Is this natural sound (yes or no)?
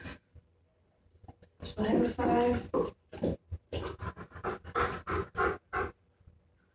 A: no